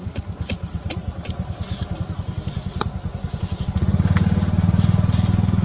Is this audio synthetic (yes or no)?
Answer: no